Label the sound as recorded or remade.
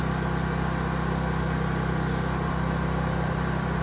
recorded